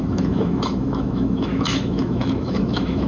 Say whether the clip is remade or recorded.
remade